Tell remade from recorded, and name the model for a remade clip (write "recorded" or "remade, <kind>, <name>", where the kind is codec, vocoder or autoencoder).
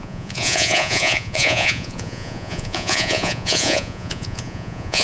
remade, vocoder, Vocos